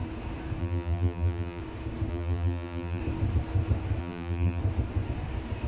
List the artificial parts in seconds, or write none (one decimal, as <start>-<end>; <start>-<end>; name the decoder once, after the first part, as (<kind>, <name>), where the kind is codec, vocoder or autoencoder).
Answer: 0.6-1.6 (vocoder, BigVGAN v2); 2.1-3.0; 4.0-4.6